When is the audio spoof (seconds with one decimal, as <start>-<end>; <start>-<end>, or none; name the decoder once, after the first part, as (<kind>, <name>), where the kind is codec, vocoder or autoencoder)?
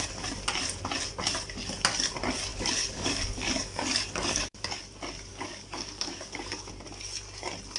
2.5-4.8 (codec, DAC); 5.3-6.7